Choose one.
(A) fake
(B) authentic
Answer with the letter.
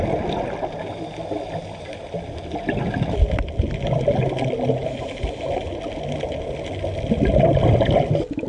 B